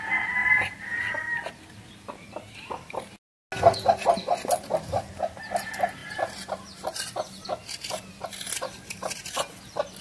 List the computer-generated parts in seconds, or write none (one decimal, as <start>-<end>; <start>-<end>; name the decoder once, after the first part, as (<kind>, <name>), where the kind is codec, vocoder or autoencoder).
none